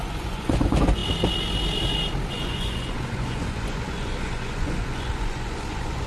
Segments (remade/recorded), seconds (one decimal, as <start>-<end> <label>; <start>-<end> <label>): 0.0-1.0 remade; 1.0-2.3 recorded; 2.3-6.1 remade